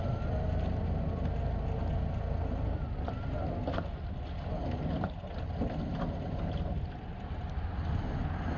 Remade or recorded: recorded